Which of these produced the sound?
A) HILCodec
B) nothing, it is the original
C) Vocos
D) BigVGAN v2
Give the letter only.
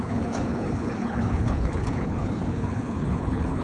A